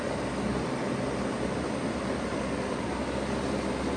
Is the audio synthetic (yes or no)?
no